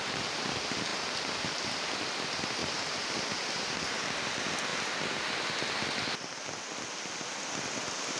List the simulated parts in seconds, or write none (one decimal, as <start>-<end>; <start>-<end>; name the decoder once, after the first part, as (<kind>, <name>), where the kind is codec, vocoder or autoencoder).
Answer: none